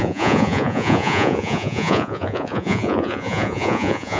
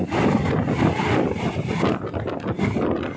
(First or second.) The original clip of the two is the second